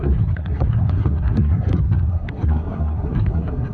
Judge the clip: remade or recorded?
remade